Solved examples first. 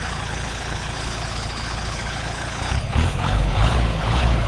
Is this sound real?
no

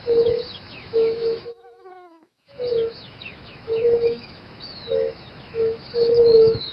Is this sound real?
no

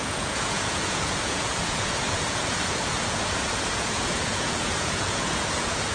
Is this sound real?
no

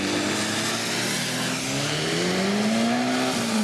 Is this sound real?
yes